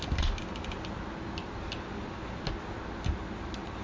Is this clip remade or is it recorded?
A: recorded